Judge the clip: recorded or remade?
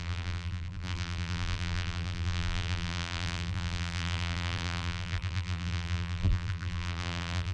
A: remade